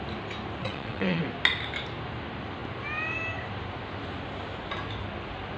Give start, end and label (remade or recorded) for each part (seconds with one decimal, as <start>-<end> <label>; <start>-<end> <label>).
0.0-0.6 recorded; 0.6-1.2 remade; 1.2-5.6 recorded